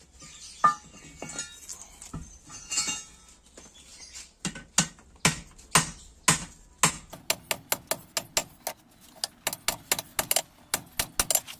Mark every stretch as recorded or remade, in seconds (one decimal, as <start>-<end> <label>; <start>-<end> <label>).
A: 0.0-11.6 recorded